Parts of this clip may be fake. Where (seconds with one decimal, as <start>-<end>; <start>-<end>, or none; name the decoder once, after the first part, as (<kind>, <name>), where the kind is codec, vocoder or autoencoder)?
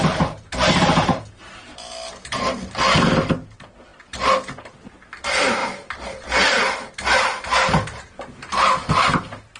none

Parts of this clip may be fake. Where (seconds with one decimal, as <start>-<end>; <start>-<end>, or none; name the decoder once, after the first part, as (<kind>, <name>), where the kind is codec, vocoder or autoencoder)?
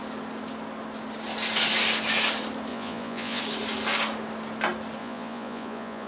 2.7-3.4 (vocoder, Vocos); 5.0-6.1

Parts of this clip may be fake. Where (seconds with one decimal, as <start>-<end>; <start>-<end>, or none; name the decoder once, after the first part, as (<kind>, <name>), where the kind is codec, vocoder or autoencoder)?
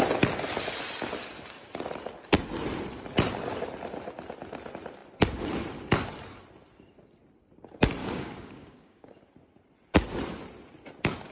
8.0-9.1 (codec, DAC)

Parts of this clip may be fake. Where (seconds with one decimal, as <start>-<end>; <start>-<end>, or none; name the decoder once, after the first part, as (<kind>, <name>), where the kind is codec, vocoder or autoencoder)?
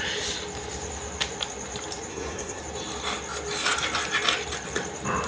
2.1-2.6 (codec, SNAC)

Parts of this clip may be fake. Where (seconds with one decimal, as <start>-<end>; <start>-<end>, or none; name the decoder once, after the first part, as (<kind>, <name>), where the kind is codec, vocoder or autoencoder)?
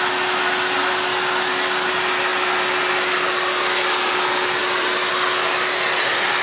none